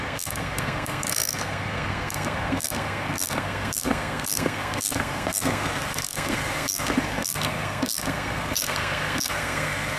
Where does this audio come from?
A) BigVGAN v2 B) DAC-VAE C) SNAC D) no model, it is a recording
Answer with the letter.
C